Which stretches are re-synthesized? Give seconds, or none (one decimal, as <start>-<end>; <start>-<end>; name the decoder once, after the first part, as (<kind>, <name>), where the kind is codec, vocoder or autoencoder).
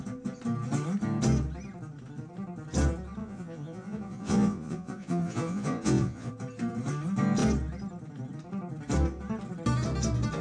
3.2-6.3 (vocoder, Vocos)